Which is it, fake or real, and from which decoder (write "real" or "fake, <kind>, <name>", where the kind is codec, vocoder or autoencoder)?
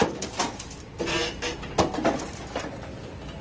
real